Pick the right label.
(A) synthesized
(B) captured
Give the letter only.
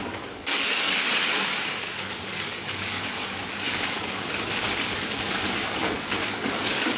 A